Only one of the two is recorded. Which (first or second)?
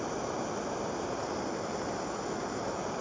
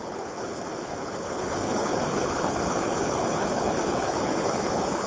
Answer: first